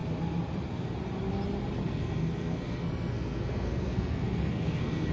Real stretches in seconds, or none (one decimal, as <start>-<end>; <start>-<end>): 0.0-1.8